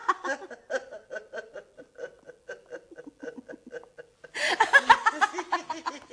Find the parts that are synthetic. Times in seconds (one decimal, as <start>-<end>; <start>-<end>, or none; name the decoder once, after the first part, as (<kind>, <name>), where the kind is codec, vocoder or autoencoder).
none